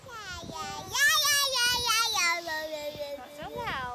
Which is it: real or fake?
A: real